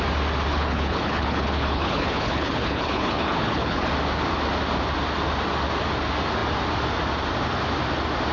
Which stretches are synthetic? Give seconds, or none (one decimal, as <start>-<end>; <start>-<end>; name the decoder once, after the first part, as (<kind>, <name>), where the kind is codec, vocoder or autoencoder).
0.5-3.9 (codec, HILCodec)